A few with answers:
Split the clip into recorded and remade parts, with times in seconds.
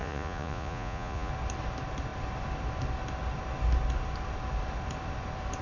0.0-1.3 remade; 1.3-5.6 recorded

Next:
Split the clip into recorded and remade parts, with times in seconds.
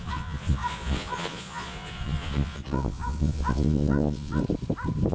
0.0-4.4 remade; 4.4-5.1 recorded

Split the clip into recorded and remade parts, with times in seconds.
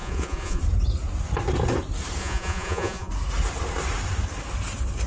0.0-0.6 remade; 0.6-2.2 recorded; 2.2-3.1 remade; 3.1-5.1 recorded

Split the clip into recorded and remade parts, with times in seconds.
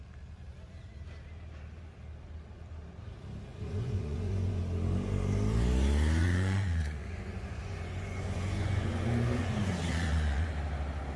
0.0-3.5 recorded; 3.5-4.6 remade; 4.6-6.2 recorded; 6.2-10.5 remade; 10.5-11.2 recorded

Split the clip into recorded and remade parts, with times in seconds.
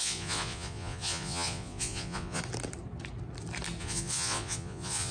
0.0-2.4 remade; 2.4-3.8 recorded; 3.8-5.1 remade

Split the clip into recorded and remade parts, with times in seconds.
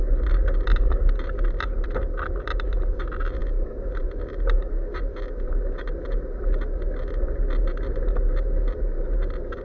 0.0-9.6 recorded